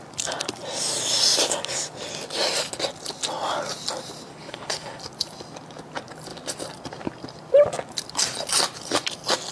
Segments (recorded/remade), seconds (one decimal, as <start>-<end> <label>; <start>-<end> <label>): 0.0-4.3 recorded; 4.3-5.0 remade; 5.0-9.5 recorded